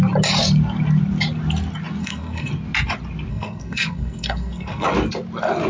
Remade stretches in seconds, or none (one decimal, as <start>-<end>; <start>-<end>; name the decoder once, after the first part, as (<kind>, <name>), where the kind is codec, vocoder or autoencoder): 2.0-2.5 (codec, SNAC); 3.3-4.9